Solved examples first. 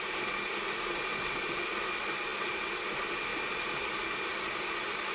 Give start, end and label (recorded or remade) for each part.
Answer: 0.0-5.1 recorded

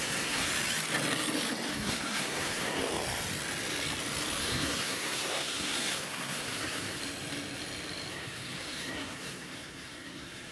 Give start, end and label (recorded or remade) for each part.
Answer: 0.0-0.5 remade; 0.5-1.7 recorded; 1.7-2.8 remade; 2.8-4.4 recorded; 4.4-7.0 remade; 7.0-8.1 recorded; 8.1-10.5 remade

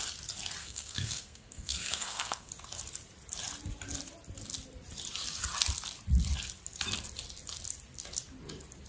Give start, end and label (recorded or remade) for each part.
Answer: 0.0-0.6 recorded; 0.6-2.5 remade; 2.5-8.9 recorded

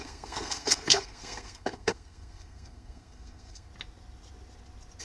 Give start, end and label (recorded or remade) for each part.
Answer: 0.0-3.7 remade; 3.7-5.0 recorded

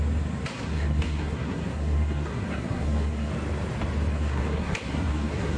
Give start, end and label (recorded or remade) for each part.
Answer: 0.0-0.5 recorded; 0.5-3.3 remade; 3.3-4.1 recorded; 4.1-5.6 remade